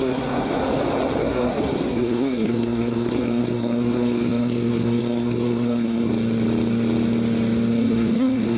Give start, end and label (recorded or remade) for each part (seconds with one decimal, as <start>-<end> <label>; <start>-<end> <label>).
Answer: 0.0-0.6 remade; 0.6-1.2 recorded; 1.2-6.1 remade; 6.1-7.7 recorded; 7.7-8.6 remade